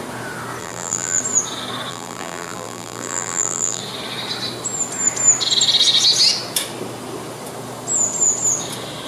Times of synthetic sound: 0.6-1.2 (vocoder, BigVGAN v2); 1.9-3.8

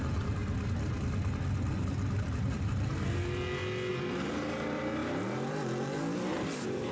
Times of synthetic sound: 0.0-0.4 (vocoder, BigVGAN v2); 1.7-2.9; 3.9-6.9

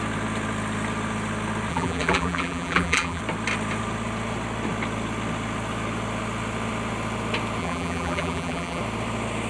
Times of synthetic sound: 1.7-3.2 (vocoder, BigVGAN v2); 7.6-8.8

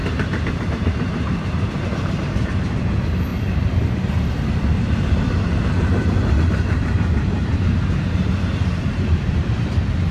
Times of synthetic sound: 0.0-3.3 (vocoder, BigVGAN v2); 6.4-10.1

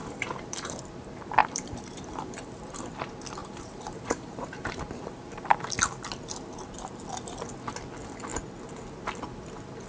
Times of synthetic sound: 0.0-0.8 (vocoder, BigVGAN v2); 1.4-3.0; 3.4-5.4

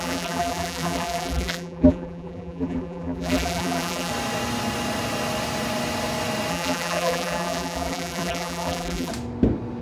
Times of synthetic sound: 0.0-4.1 (vocoder, BigVGAN v2); 6.5-9.1

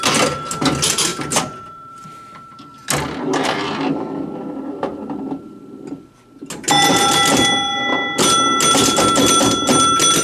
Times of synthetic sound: 4.9-6.1 (vocoder, BigVGAN v2)

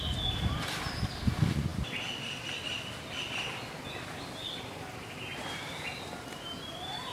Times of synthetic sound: none